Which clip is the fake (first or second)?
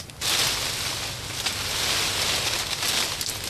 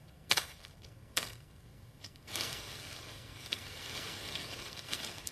second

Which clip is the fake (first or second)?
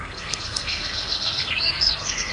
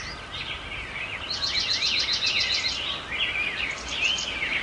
first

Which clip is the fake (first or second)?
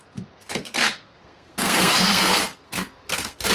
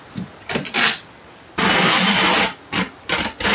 first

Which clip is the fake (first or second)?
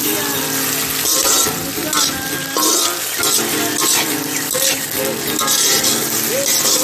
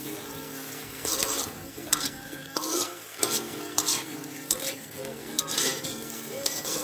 second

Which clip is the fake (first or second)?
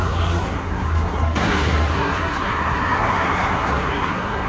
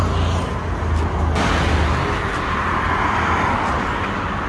first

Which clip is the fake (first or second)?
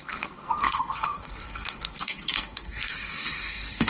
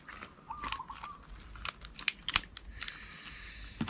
first